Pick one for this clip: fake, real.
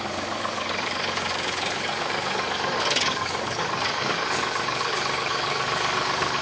fake